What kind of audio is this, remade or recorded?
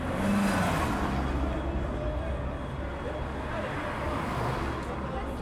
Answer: recorded